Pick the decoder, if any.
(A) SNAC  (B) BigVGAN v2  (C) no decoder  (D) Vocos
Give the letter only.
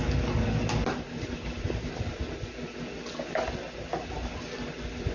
C